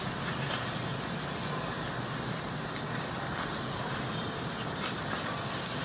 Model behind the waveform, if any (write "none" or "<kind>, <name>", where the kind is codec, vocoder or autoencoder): none